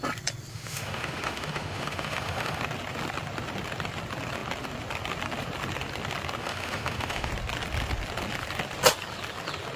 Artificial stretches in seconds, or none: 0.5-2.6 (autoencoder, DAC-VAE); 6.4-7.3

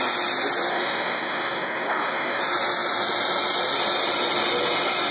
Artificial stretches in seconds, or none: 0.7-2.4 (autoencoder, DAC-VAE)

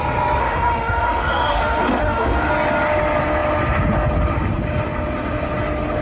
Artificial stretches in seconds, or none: 0.4-2.5 (autoencoder, DAC-VAE)

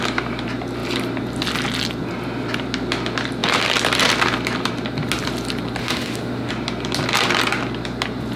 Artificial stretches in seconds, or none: 5.8-6.5 (autoencoder, DAC-VAE)